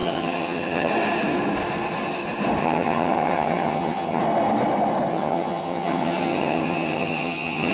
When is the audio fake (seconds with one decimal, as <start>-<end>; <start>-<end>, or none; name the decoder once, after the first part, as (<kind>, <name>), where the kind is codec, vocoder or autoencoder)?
0.0-0.9 (vocoder, HiFi-GAN); 2.6-4.2; 5.1-7.7